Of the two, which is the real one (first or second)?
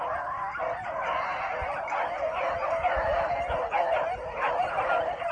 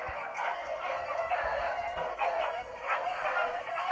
first